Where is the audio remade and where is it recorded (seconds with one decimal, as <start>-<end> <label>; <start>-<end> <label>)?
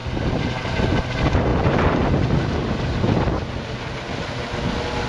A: 0.0-5.1 recorded